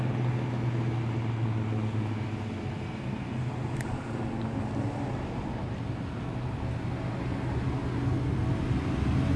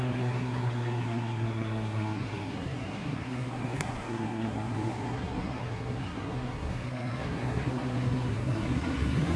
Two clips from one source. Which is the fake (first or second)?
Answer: second